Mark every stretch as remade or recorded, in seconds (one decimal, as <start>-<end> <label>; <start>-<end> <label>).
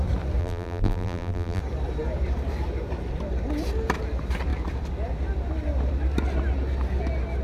0.0-0.4 recorded; 0.4-1.6 remade; 1.6-7.4 recorded